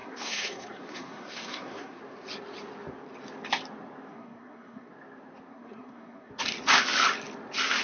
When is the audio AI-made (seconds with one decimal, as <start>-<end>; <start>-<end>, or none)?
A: 0.0-2.0; 4.1-4.9; 5.5-6.3